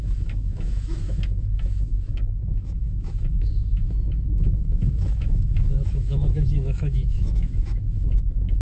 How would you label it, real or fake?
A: fake